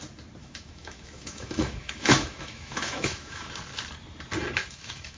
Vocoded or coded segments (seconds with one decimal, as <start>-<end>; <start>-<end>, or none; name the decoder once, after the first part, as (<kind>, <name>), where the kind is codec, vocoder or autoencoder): 0.4-3.5 (autoencoder, DAC-VAE); 4.6-5.2

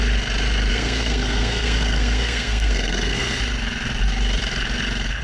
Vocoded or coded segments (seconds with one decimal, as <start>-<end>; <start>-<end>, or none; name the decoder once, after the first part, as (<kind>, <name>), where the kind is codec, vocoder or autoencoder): 0.7-3.4 (codec, SNAC)

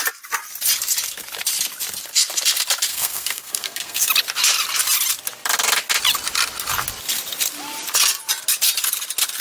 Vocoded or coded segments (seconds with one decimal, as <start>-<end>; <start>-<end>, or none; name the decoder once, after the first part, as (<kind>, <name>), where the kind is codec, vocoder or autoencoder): 2.9-4.1 (codec, SNAC)

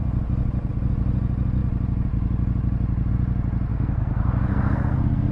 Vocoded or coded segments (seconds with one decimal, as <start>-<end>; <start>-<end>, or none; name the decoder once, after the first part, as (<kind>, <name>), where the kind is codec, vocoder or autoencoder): 3.7-5.3 (codec, SNAC)

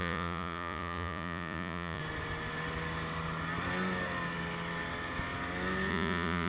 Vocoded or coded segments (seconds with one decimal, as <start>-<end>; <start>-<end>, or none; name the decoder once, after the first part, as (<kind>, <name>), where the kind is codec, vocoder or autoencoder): 0.0-2.0 (vocoder, Vocos); 5.9-6.5

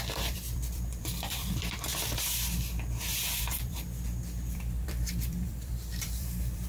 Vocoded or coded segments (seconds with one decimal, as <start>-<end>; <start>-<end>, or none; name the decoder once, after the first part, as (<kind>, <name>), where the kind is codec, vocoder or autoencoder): 0.0-1.9 (vocoder, BigVGAN v2); 3.4-6.7